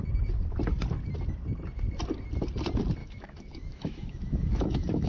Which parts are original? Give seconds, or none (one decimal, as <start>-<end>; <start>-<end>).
0.0-3.0